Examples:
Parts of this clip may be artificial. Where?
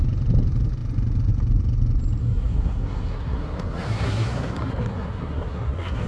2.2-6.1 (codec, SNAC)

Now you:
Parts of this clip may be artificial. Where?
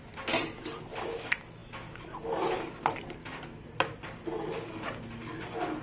none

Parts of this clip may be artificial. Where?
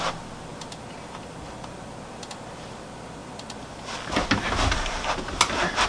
none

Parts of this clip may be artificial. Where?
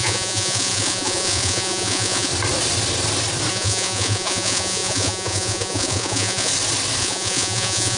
0.0-2.3 (vocoder, Vocos); 3.5-6.5; 7.0-8.0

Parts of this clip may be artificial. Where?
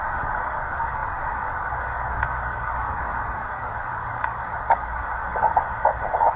0.0-6.4 (codec, DAC)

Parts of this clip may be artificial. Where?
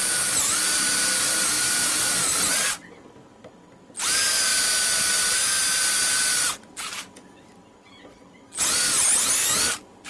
2.2-2.8 (vocoder, BigVGAN v2)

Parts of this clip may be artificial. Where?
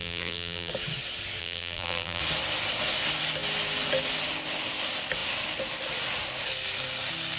0.0-0.7 (vocoder, BigVGAN v2); 1.4-2.2